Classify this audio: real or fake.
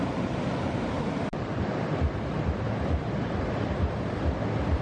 fake